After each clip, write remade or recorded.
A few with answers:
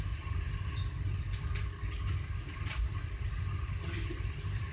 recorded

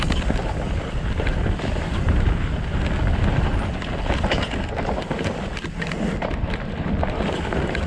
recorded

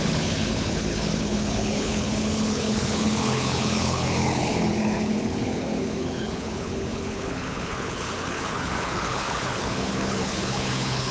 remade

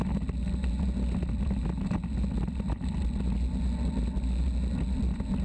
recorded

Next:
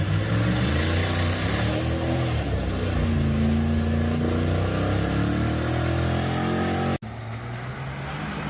recorded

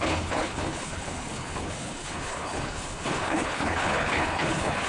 remade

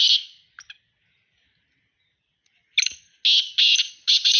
recorded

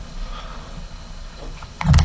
remade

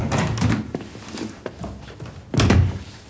recorded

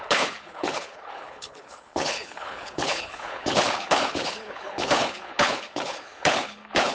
remade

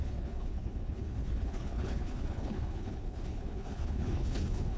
remade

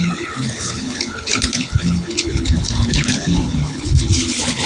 remade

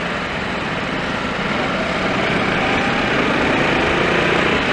recorded